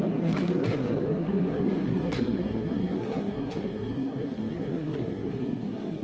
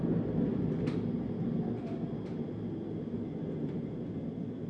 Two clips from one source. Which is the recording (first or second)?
second